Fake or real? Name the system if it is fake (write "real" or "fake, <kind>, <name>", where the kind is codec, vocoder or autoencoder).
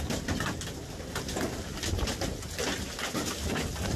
real